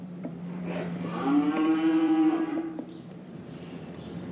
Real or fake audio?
fake